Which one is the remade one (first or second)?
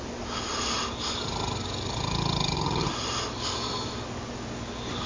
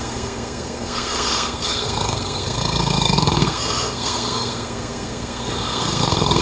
second